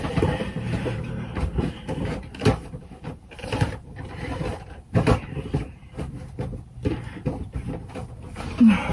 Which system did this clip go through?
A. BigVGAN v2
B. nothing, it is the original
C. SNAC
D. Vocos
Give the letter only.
A